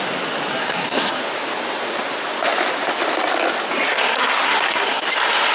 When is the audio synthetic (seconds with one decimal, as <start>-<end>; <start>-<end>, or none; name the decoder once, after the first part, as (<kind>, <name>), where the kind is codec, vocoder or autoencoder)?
0.5-1.2 (codec, SNAC); 3.9-5.0